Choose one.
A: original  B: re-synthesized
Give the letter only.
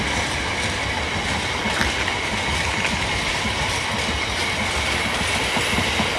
A